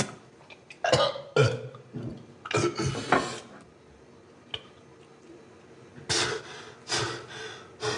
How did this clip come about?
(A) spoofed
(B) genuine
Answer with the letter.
B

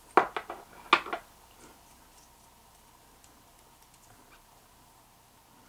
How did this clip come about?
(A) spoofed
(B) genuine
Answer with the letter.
B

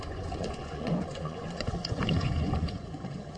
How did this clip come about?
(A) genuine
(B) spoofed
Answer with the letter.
B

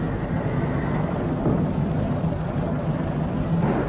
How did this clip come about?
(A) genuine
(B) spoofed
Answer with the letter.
A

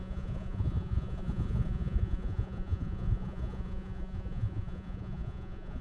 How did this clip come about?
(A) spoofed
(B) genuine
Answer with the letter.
A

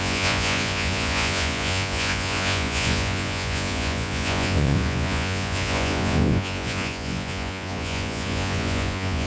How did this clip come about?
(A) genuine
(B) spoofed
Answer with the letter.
B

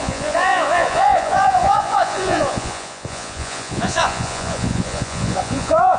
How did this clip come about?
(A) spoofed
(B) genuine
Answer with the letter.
A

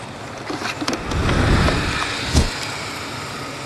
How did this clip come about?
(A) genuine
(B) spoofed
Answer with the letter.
A